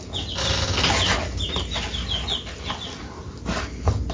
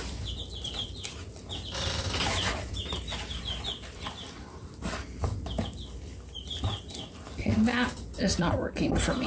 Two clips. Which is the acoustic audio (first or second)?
first